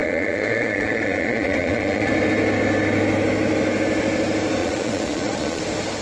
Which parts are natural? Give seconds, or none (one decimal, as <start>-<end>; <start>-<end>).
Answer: 2.1-4.6; 5.6-6.0